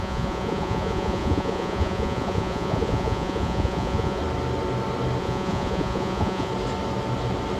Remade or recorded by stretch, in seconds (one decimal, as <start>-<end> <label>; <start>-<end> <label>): 0.0-4.2 remade; 4.2-5.2 recorded; 5.2-6.5 remade; 6.5-7.6 recorded